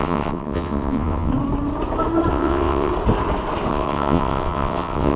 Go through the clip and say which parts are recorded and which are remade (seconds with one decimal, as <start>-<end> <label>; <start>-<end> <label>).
0.0-1.3 remade; 1.3-2.3 recorded; 2.3-2.9 remade; 2.9-3.7 recorded; 3.7-5.2 remade